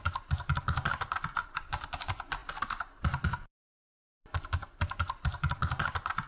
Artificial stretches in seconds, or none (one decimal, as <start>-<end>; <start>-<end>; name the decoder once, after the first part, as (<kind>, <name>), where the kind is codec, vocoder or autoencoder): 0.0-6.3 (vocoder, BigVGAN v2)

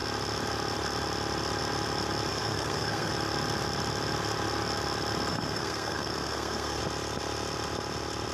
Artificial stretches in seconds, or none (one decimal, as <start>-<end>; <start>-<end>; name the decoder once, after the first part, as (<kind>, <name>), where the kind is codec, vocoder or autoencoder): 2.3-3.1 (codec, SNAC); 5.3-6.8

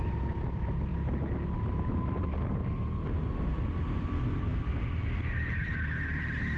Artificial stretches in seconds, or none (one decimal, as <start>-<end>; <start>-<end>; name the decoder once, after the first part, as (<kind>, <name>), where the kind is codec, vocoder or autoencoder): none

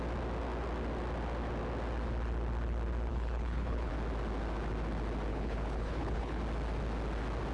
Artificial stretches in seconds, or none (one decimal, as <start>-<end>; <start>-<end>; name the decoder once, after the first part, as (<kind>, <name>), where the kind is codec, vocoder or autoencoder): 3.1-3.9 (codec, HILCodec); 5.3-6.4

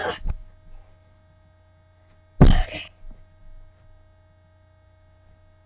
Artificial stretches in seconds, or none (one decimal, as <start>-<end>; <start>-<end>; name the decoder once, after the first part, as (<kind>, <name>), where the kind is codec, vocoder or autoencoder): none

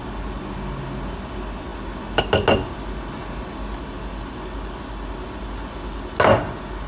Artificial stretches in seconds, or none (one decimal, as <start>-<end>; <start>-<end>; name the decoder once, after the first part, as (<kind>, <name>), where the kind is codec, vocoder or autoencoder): none

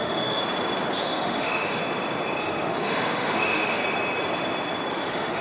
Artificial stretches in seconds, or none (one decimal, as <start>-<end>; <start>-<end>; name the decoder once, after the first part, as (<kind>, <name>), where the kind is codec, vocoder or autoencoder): 0.0-0.4 (autoencoder, DAC-VAE); 1.0-1.8; 2.4-3.8; 4.9-5.4